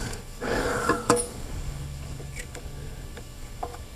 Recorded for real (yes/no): no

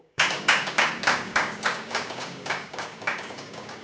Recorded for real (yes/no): no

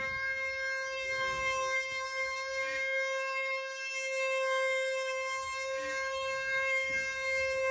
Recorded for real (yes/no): no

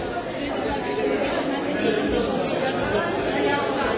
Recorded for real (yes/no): yes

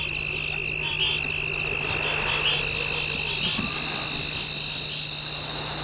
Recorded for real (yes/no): yes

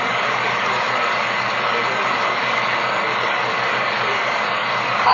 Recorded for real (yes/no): no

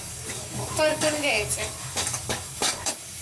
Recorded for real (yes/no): no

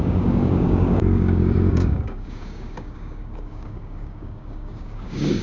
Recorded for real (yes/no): no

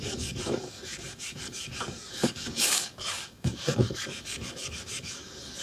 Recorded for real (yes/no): no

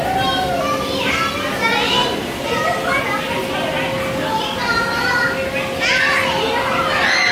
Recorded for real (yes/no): yes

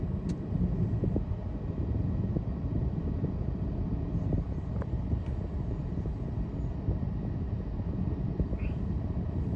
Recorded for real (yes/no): yes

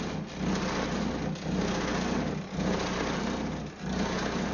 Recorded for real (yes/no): yes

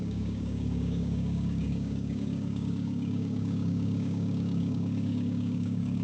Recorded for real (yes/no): no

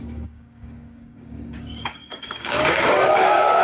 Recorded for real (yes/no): no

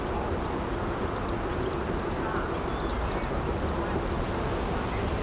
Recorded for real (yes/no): yes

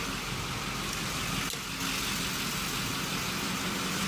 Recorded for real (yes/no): yes